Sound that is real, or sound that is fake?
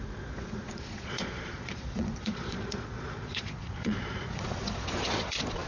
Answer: fake